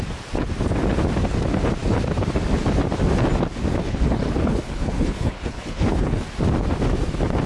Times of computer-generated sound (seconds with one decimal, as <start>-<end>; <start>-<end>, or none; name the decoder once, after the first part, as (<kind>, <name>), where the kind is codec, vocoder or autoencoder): 3.8-6.2 (codec, HILCodec)